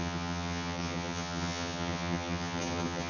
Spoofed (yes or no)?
yes